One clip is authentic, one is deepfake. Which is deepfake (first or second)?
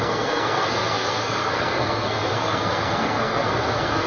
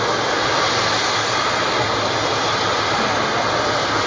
first